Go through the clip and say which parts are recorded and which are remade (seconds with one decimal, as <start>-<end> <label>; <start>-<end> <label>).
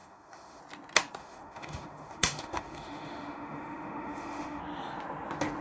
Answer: 0.0-0.6 remade; 0.6-1.2 recorded; 1.2-4.6 remade; 4.6-5.6 recorded